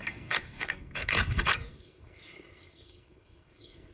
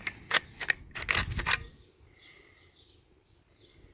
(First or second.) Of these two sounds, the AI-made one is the first